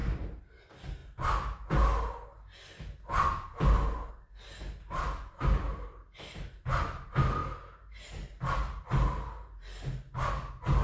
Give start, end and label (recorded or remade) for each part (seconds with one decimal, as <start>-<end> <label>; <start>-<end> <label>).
0.0-0.6 remade; 0.6-10.8 recorded